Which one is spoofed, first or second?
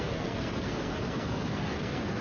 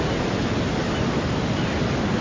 first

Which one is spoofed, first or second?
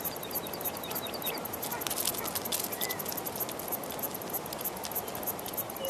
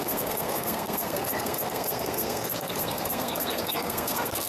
second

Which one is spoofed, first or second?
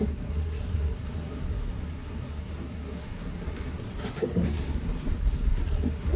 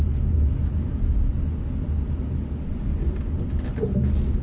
first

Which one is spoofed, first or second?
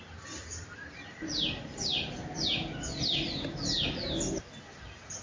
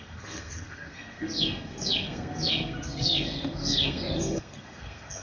second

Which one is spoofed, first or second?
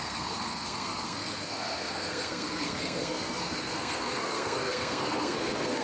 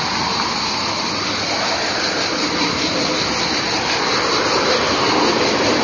first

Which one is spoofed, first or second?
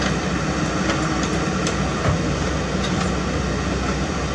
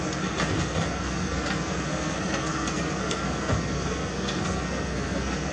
second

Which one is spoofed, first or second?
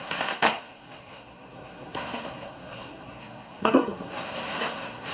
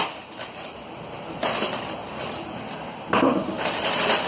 first